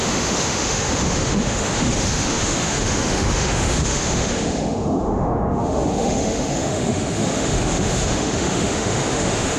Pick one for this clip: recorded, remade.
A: remade